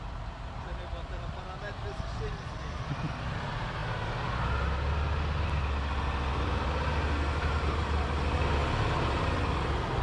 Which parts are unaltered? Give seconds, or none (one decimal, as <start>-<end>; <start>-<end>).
0.0-10.0